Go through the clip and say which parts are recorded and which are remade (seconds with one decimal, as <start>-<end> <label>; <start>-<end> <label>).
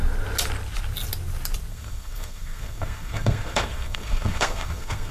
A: 0.0-1.7 recorded; 1.7-5.1 remade